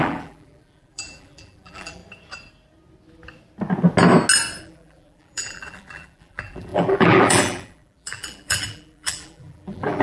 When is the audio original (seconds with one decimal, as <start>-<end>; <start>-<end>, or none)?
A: 2.0-4.6

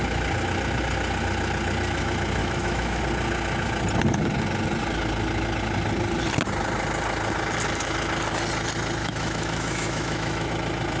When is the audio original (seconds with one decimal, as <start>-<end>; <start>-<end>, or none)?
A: 0.0-2.4; 3.0-9.0; 10.5-11.0

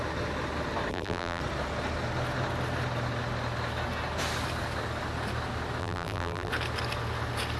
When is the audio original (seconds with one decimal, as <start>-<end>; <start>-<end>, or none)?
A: 0.0-0.9; 1.4-5.8; 6.5-7.6

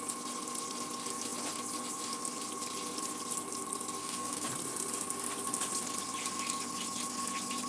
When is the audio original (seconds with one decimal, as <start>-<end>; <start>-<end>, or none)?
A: 0.0-4.0; 4.5-7.7

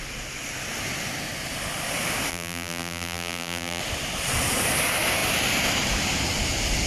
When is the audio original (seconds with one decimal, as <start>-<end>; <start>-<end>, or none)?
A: 0.0-2.3; 3.8-6.9

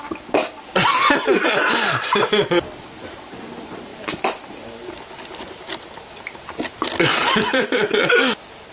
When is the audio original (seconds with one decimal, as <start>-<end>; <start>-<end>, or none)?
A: 0.0-2.2; 2.9-3.9; 6.9-7.5

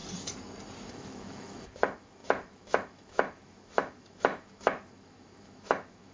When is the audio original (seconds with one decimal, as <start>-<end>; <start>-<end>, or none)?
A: 0.0-0.9

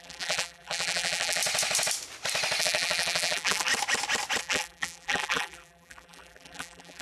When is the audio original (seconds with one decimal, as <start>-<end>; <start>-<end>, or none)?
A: 1.4-2.6; 3.7-4.4